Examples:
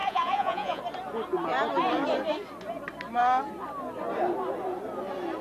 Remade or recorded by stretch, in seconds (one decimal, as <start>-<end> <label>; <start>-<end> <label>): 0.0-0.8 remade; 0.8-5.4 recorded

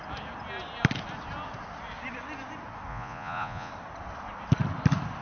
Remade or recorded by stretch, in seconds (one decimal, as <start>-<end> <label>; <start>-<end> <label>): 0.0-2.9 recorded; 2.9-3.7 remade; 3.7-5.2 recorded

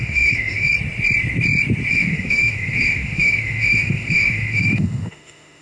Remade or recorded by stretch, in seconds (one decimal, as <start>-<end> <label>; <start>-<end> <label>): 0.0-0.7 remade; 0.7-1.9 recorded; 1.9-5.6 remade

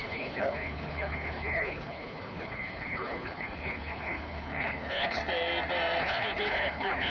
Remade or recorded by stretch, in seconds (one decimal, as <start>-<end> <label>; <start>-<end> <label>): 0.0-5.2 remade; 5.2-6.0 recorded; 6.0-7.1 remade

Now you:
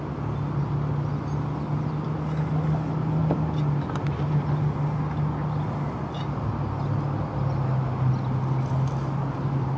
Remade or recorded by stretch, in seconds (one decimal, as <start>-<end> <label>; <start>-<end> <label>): 0.0-9.8 recorded